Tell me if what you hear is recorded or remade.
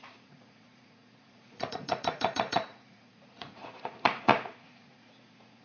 remade